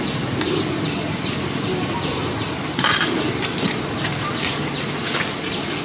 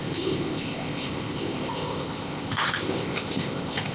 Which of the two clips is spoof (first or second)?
second